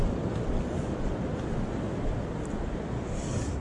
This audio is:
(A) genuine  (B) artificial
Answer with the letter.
A